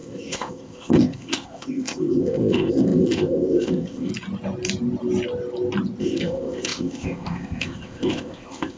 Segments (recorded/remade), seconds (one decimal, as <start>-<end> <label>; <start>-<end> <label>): 0.0-4.1 remade; 4.1-6.0 recorded; 6.0-8.8 remade